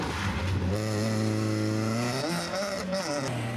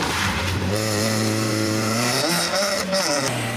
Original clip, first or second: first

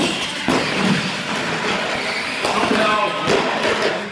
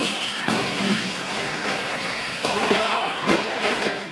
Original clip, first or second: first